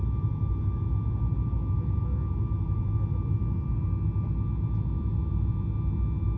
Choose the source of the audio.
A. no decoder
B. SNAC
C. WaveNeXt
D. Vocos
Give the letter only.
A